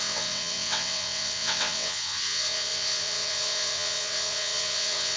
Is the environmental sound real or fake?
fake